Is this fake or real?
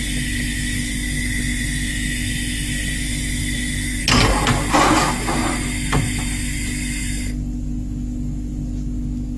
real